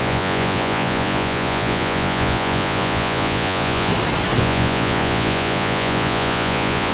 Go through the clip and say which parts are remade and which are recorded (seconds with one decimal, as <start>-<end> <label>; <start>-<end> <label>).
0.0-3.9 remade; 3.9-4.4 recorded; 4.4-6.9 remade